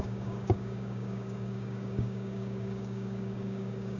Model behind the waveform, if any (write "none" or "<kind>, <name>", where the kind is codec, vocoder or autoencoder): codec, DAC